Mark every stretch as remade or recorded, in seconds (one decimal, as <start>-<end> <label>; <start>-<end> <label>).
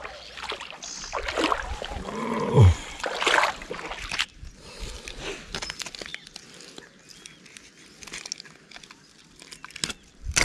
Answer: 0.0-10.4 recorded